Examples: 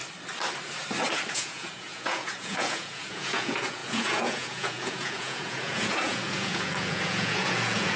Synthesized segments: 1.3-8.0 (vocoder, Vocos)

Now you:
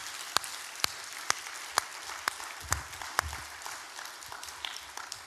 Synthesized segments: 0.0-1.0 (vocoder, BigVGAN v2); 1.9-5.3

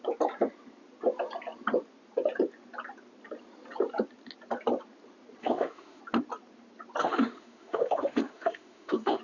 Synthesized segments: 5.4-6.0 (autoencoder, DAC-VAE); 7.0-9.2

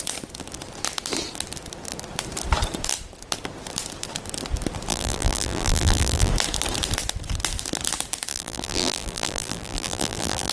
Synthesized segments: 4.9-6.3 (vocoder, BigVGAN v2); 8.3-10.5